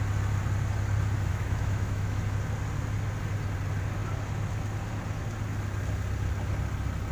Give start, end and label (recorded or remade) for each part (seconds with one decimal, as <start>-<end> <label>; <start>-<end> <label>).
0.0-1.3 recorded; 1.3-2.2 remade; 2.2-7.1 recorded

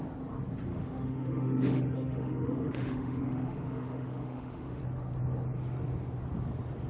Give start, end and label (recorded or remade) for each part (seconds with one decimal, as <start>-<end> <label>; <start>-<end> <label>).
0.0-0.7 recorded; 0.7-4.8 remade; 4.8-6.9 recorded

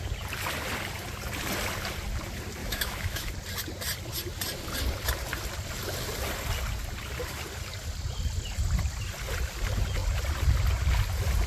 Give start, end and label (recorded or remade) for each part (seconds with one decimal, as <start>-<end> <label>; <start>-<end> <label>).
0.0-2.6 recorded; 2.6-3.3 remade; 3.3-11.5 recorded

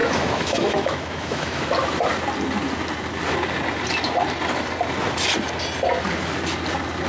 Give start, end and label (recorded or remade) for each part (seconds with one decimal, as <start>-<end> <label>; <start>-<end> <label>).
0.0-1.6 remade; 1.6-7.1 recorded